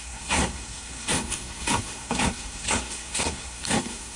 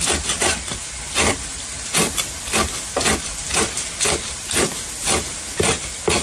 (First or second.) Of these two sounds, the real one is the second